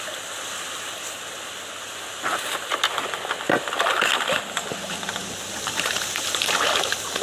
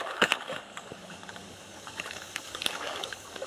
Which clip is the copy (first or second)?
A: second